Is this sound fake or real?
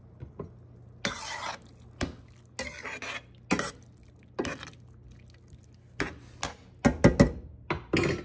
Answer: real